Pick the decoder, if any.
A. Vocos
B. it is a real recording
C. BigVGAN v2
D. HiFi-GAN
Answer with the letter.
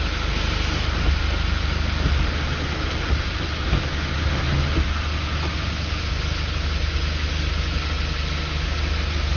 B